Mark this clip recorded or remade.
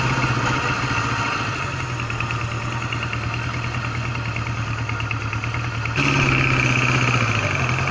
recorded